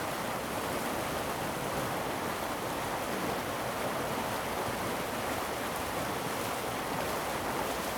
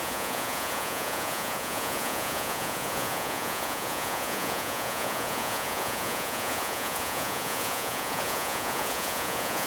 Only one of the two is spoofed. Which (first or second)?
second